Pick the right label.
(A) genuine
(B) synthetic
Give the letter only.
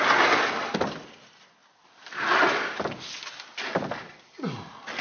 A